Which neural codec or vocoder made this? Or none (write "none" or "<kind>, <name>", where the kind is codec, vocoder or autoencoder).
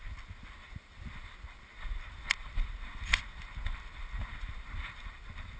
none